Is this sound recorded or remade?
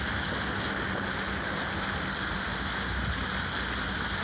recorded